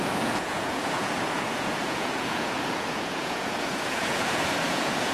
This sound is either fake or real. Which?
fake